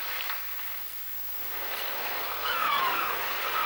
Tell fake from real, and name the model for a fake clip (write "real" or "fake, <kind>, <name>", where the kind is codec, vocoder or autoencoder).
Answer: fake, codec, SNAC